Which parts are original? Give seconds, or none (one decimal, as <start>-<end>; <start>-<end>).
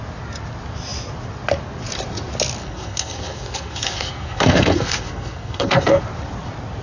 0.0-2.6; 6.0-6.8